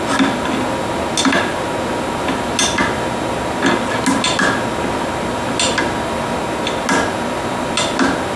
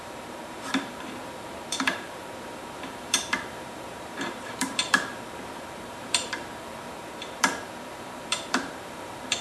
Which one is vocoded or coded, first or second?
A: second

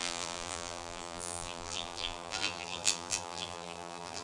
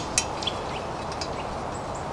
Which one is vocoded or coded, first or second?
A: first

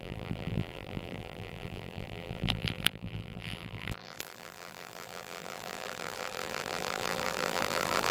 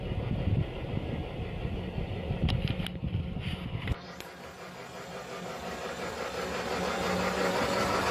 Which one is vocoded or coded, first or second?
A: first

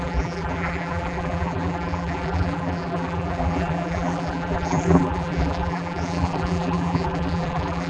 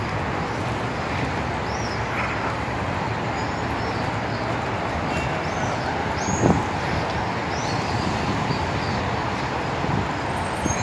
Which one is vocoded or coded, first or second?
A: first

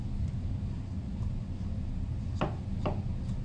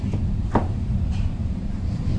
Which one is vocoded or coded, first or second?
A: second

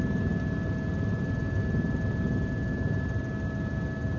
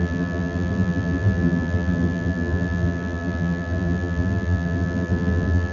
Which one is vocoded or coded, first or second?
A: second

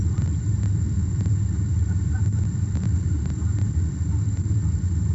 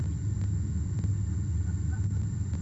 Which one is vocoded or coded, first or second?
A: first